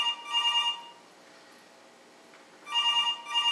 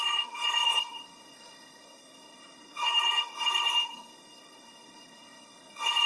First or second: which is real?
first